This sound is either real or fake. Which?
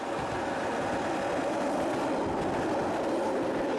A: real